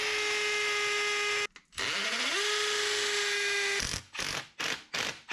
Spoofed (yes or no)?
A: no